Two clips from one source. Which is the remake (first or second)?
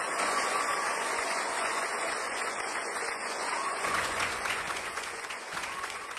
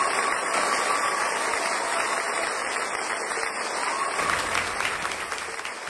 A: first